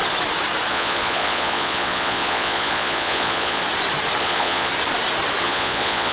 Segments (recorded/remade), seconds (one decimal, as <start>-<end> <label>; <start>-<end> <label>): 0.0-0.7 recorded; 0.7-3.6 remade; 3.6-4.2 recorded; 4.2-4.7 remade; 4.7-5.4 recorded; 5.4-6.1 remade